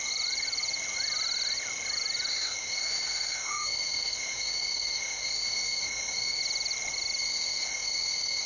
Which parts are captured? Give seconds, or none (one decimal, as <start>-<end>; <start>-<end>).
0.0-2.3; 6.4-7.2